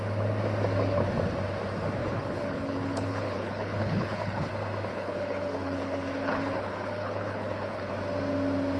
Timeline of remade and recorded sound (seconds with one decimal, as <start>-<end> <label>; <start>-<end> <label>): 0.0-2.0 recorded; 2.0-4.5 remade; 4.5-4.9 recorded; 4.9-7.9 remade; 7.9-8.8 recorded